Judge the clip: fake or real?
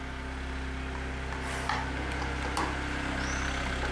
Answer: real